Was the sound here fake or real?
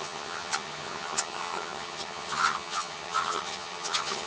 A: fake